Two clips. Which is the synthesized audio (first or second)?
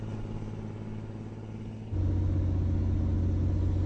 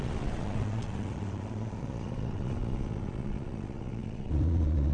second